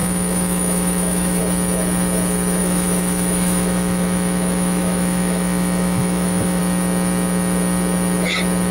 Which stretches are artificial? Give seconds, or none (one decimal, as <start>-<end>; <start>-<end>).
0.0-1.4; 2.6-6.6